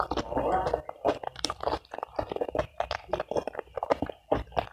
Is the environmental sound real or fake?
real